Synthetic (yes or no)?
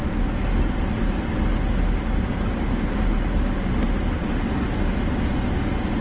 no